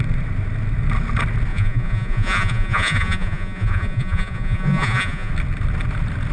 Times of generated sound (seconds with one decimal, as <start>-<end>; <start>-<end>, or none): 1.5-5.3

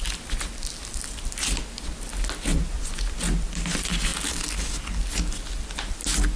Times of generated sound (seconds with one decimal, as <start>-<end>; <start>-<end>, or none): 2.5-3.0

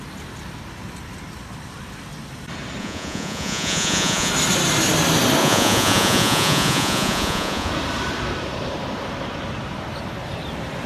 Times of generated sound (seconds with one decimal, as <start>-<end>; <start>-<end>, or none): 2.8-4.3; 5.4-7.7